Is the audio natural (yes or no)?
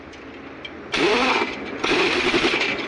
yes